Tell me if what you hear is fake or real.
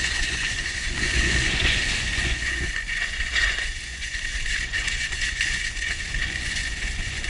fake